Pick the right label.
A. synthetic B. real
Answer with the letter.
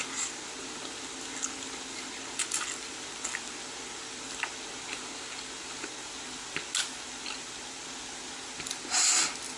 B